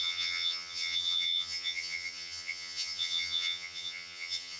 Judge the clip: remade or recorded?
remade